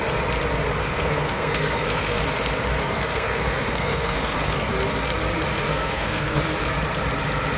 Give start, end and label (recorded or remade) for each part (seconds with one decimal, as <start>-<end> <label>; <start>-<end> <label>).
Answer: 0.0-0.8 recorded; 0.8-2.2 remade; 2.2-2.8 recorded; 2.8-4.7 remade; 4.7-5.7 recorded; 5.7-6.4 remade; 6.4-7.6 recorded